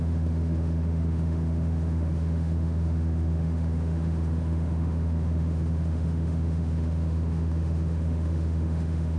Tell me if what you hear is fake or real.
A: fake